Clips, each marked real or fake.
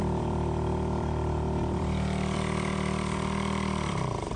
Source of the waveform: fake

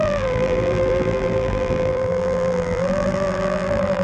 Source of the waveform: fake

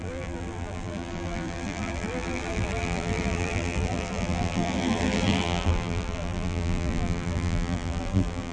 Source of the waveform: fake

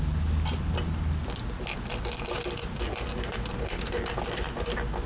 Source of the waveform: real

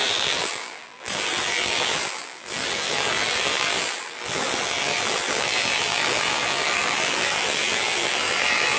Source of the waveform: fake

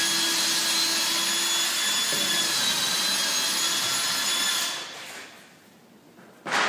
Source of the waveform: real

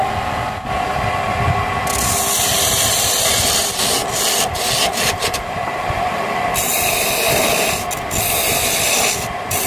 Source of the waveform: real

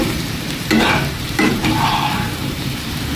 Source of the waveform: fake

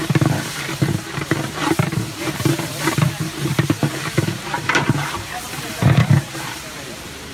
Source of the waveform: fake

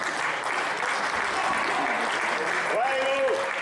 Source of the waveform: real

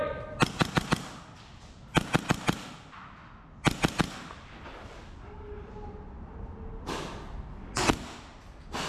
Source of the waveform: real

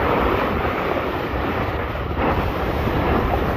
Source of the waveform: fake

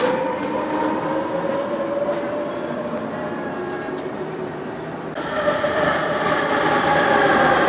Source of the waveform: fake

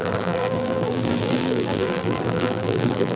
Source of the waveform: fake